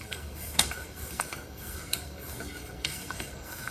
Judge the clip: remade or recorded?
remade